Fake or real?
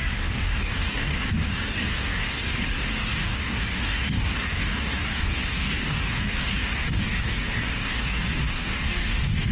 fake